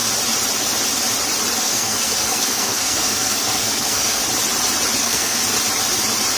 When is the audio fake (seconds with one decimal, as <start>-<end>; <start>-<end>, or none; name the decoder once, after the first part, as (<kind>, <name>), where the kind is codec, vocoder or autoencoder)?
1.6-4.2 (codec, SNAC); 5.0-5.4